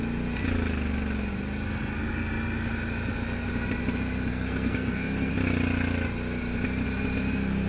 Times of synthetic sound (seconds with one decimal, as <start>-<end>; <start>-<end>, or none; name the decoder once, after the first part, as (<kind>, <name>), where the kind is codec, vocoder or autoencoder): 4.3-5.3 (codec, SNAC)